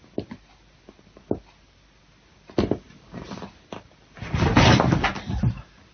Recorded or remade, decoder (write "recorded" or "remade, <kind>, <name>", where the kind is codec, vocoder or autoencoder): recorded